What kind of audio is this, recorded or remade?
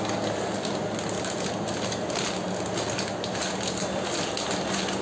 recorded